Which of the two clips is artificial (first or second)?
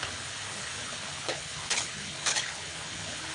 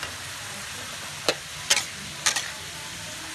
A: first